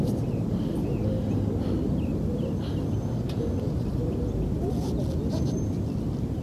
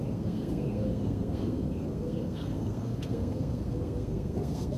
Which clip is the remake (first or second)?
second